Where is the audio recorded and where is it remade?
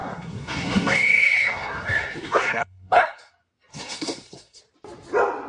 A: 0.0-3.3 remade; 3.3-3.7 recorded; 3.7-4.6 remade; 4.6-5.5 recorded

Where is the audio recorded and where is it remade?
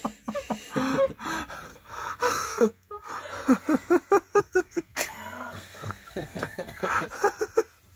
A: 0.0-1.7 recorded; 1.7-3.1 remade; 3.1-4.3 recorded; 4.3-6.9 remade; 6.9-8.0 recorded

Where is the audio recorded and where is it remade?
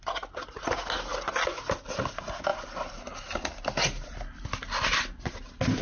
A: 0.0-5.8 recorded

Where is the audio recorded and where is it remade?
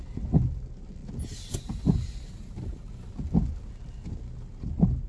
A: 0.0-5.1 recorded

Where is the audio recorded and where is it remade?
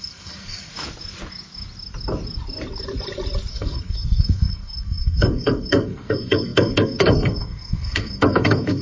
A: 0.0-0.7 remade; 0.7-3.5 recorded; 3.5-8.8 remade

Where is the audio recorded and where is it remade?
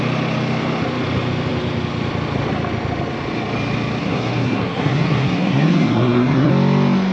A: 0.0-4.0 recorded; 4.0-6.5 remade; 6.5-7.1 recorded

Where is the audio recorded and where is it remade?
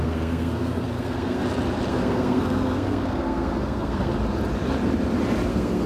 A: 0.0-1.4 remade; 1.4-1.9 recorded; 1.9-4.1 remade; 4.1-5.5 recorded; 5.5-5.9 remade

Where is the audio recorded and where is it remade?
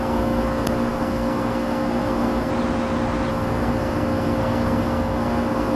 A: 0.0-2.5 remade; 2.5-3.3 recorded; 3.3-5.8 remade